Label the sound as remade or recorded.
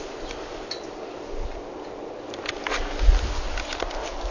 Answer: recorded